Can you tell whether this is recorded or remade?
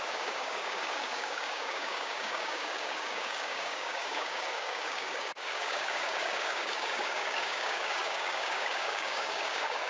remade